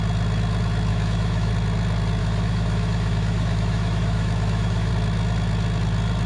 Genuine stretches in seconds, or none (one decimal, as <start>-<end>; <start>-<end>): 0.0-0.9; 1.5-2.2; 4.9-6.3